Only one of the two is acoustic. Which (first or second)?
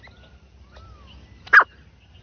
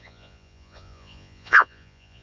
first